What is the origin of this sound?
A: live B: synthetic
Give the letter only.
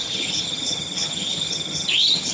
B